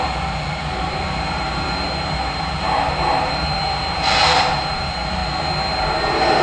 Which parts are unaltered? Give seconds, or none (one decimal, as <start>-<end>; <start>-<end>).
5.2-5.8